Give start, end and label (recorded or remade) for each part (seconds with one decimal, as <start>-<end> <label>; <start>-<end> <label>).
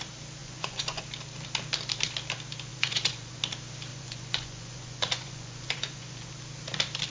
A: 0.0-0.4 recorded; 0.4-1.0 remade; 1.0-2.7 recorded; 2.7-3.4 remade; 3.4-3.9 recorded; 3.9-6.3 remade; 6.3-7.1 recorded